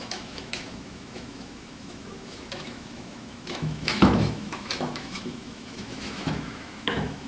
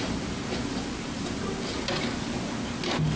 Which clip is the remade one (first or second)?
first